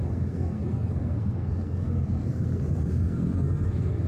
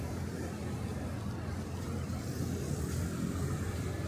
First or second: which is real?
second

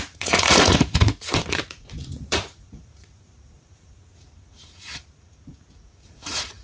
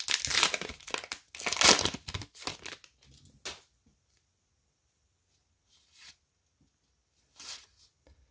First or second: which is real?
second